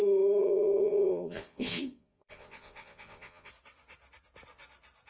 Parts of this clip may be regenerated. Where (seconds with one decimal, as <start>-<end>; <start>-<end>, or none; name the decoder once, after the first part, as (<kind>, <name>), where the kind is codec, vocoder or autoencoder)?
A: 0.4-3.5 (vocoder, Vocos)